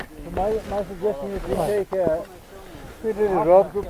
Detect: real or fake real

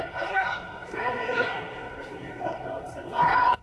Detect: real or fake fake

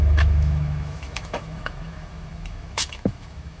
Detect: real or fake fake